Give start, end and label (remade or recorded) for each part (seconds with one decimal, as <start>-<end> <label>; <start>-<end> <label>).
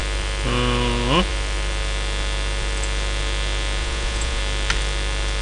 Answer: 0.0-3.8 recorded; 3.8-4.4 remade; 4.4-5.4 recorded